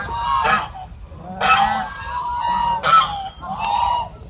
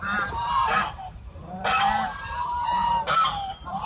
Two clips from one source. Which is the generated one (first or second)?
second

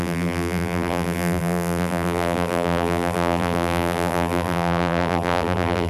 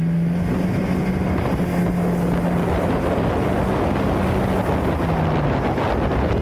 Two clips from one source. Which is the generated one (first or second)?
first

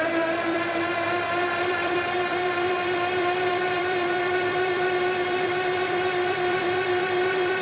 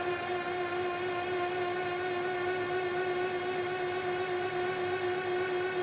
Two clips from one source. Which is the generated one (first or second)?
first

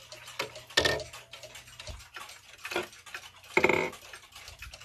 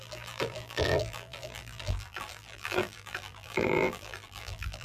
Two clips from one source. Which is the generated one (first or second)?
second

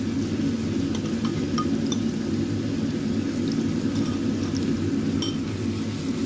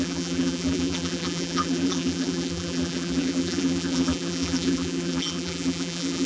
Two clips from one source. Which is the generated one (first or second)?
second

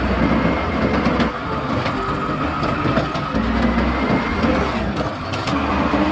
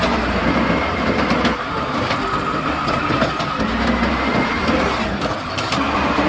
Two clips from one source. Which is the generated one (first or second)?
second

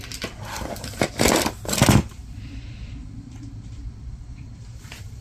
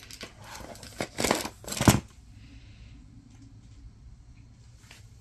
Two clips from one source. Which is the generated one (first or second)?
first